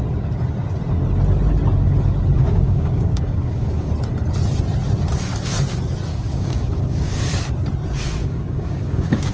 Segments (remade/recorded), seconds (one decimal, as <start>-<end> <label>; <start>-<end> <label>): 0.0-2.4 recorded; 2.4-3.9 remade; 3.9-6.1 recorded; 6.1-7.2 remade; 7.2-8.2 recorded; 8.2-9.3 remade